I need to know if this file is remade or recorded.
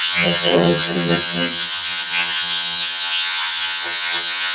remade